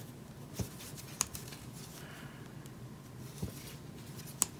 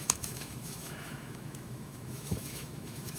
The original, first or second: first